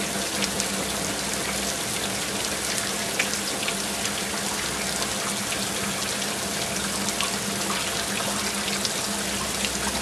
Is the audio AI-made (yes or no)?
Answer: no